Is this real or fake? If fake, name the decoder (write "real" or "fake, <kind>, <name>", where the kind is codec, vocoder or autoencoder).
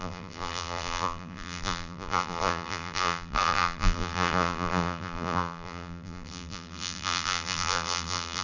fake, vocoder, BigVGAN v2